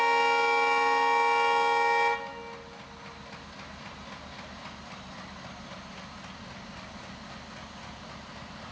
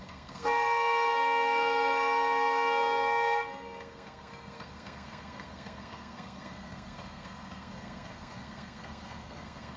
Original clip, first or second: first